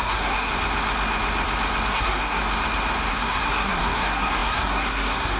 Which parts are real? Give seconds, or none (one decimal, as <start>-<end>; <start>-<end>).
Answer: 0.5-1.9; 2.4-3.1

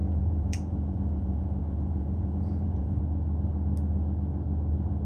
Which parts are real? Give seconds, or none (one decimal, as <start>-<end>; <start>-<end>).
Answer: 3.0-5.0

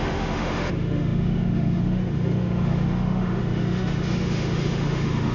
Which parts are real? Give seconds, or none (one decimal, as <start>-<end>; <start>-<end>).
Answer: none